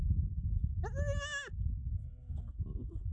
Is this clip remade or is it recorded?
recorded